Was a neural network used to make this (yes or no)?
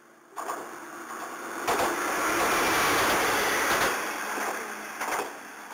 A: no